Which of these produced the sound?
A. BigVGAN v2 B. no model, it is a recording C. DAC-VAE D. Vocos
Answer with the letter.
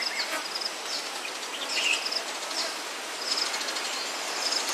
B